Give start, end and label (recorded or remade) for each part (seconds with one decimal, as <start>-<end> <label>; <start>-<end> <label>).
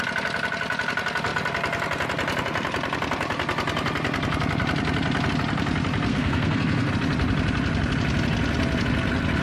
0.0-6.1 recorded; 6.1-6.9 remade; 6.9-9.4 recorded